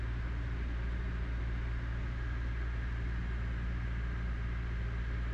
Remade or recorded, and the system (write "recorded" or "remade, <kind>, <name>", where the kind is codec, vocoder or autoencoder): recorded